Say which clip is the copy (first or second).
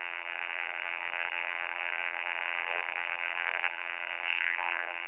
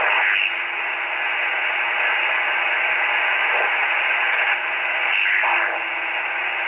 first